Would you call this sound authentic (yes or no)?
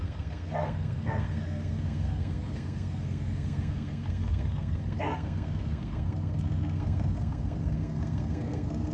no